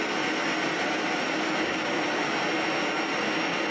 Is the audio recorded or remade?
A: recorded